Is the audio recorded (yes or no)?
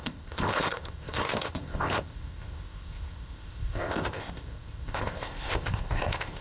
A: no